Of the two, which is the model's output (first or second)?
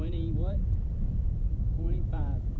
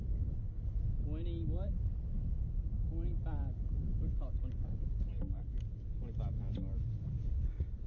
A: first